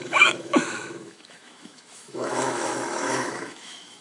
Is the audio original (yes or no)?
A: no